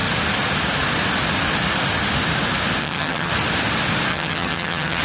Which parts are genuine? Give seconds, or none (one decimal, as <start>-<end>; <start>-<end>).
0.0-2.8; 3.3-4.1

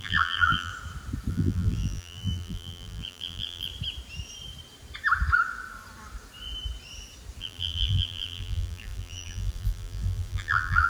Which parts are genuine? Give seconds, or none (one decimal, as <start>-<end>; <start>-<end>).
0.7-1.3; 3.7-7.4